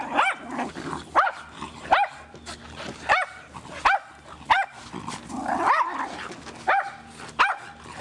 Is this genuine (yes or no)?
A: yes